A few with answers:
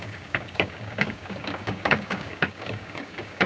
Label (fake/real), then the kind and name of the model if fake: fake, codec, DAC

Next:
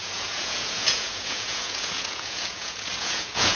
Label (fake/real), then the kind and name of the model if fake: fake, vocoder, Vocos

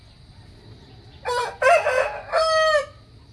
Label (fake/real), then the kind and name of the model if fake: real